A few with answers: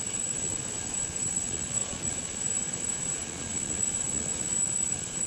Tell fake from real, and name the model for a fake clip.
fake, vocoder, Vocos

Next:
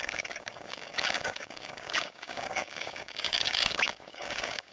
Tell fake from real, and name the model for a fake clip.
fake, codec, DAC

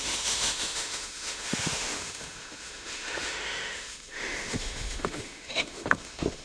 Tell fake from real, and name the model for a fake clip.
fake, autoencoder, DAC-VAE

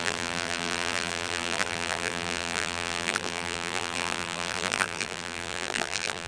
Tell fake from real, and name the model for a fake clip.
fake, vocoder, BigVGAN v2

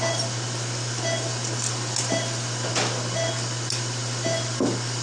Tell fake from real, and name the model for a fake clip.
real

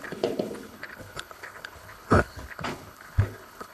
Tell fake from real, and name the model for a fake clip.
fake, codec, HILCodec